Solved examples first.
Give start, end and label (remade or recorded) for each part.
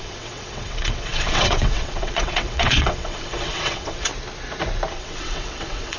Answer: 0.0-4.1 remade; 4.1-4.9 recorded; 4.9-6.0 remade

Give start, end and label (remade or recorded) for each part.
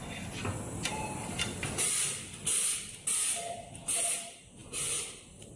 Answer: 0.0-0.8 recorded; 0.8-2.0 remade; 2.0-5.6 recorded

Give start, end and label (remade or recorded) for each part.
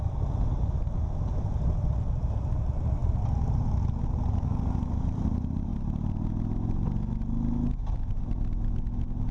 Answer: 0.0-9.3 recorded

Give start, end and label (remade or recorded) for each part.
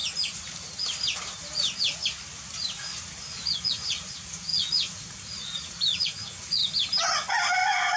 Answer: 0.0-3.6 recorded; 3.6-6.6 remade; 6.6-8.0 recorded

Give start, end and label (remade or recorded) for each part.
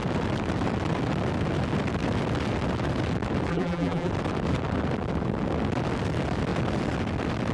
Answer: 0.0-3.5 recorded; 3.5-4.1 remade; 4.1-7.5 recorded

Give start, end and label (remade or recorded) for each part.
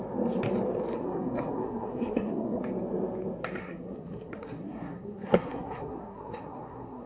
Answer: 0.0-0.9 recorded; 0.9-2.6 remade; 2.6-3.6 recorded; 3.6-7.1 remade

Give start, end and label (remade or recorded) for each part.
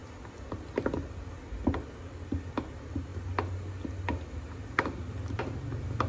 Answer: 0.0-6.1 recorded